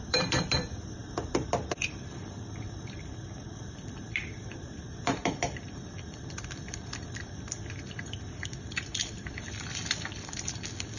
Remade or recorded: remade